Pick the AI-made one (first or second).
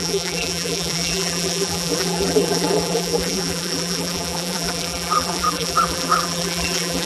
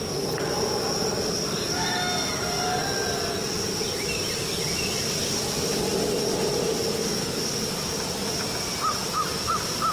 first